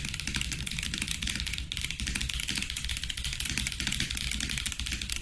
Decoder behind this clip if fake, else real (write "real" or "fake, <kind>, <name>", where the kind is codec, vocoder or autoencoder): real